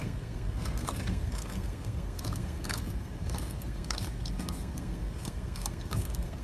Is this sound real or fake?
fake